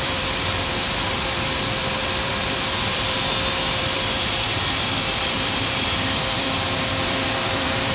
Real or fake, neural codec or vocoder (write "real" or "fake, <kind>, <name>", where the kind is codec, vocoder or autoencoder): fake, vocoder, BigVGAN v2